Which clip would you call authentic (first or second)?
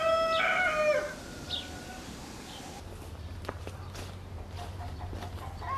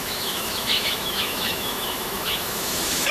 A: first